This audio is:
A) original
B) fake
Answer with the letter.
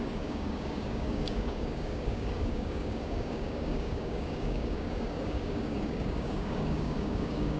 B